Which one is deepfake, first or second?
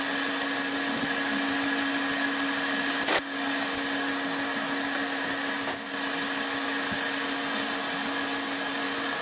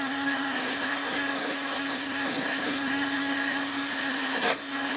second